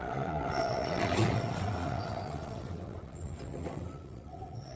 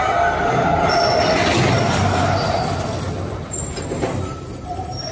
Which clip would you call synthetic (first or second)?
first